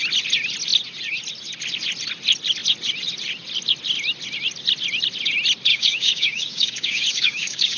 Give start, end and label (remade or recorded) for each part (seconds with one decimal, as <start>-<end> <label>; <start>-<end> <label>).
0.0-5.7 recorded; 5.7-7.8 remade